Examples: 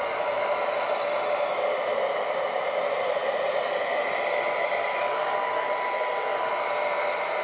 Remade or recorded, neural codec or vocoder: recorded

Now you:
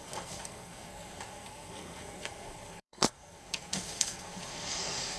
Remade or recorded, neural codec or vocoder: remade, codec, SNAC